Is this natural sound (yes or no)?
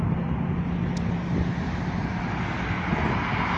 yes